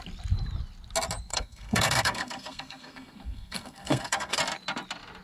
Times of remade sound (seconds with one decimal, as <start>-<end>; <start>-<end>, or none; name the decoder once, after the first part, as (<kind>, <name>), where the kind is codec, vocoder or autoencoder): 1.3-4.4 (codec, SNAC)